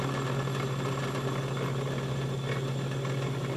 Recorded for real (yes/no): yes